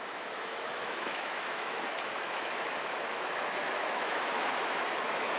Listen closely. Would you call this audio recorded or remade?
remade